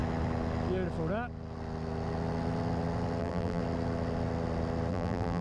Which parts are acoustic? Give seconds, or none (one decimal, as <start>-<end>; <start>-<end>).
0.0-3.2; 3.6-4.9

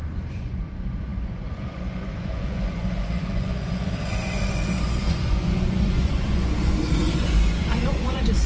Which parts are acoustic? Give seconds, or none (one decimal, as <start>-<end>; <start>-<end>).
none

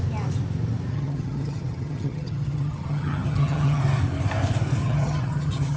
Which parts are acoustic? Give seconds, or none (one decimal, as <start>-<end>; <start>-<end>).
0.0-0.9; 3.8-4.8

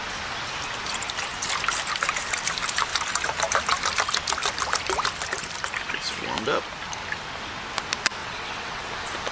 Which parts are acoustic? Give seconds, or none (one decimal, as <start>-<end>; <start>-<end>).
0.0-8.2; 8.9-9.3